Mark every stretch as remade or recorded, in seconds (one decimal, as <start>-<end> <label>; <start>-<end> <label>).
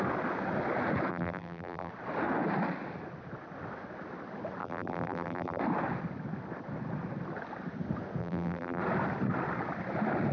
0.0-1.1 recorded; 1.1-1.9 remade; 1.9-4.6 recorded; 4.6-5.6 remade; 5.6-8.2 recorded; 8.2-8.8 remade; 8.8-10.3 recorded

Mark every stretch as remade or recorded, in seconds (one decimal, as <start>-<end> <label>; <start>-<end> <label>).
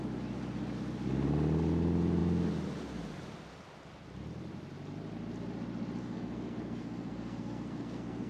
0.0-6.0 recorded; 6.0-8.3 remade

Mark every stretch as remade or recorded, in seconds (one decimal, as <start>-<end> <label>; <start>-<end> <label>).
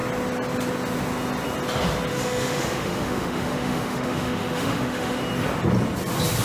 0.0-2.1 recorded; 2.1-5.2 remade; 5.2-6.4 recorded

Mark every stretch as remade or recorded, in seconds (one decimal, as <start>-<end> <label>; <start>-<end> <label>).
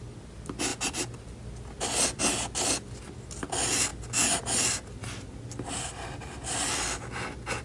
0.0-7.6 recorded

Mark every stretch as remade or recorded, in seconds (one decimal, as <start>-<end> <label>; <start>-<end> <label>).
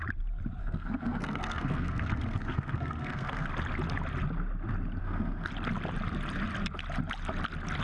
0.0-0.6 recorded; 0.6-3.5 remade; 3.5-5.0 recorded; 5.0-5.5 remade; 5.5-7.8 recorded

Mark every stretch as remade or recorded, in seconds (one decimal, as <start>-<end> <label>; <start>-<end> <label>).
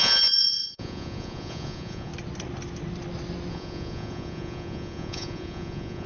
0.0-2.1 remade; 2.1-3.5 recorded; 3.5-6.1 remade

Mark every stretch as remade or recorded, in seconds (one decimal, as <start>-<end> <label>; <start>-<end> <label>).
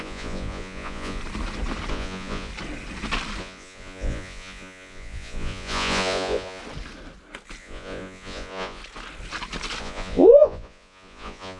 0.0-1.2 remade; 1.2-1.9 recorded; 1.9-2.5 remade; 2.5-3.4 recorded; 3.4-6.6 remade; 6.6-7.6 recorded; 7.6-8.8 remade; 8.8-9.8 recorded; 9.8-11.6 remade